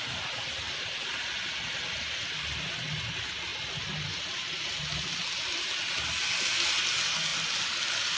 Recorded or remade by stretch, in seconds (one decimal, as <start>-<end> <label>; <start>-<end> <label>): 0.0-8.2 recorded